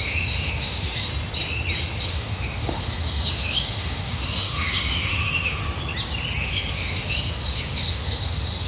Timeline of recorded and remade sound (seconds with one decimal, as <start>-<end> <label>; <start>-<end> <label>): 0.0-1.1 remade; 1.1-2.0 recorded; 2.0-5.6 remade; 5.6-6.4 recorded; 6.4-8.7 remade